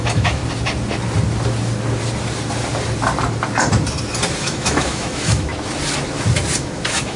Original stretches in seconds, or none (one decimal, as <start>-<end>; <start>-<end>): 0.4-4.4; 5.5-6.6